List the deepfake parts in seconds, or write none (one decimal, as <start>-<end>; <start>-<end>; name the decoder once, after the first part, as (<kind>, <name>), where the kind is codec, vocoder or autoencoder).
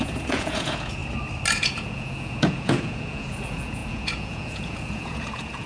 0.0-1.0 (vocoder, Vocos); 1.5-5.7